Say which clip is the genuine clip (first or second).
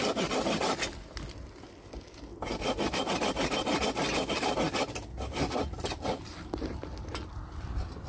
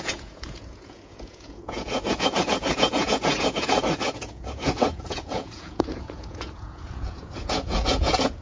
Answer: first